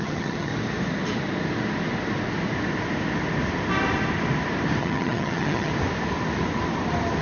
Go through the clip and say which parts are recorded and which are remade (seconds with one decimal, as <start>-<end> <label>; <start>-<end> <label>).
0.0-0.5 remade; 0.5-4.8 recorded; 4.8-5.7 remade; 5.7-7.2 recorded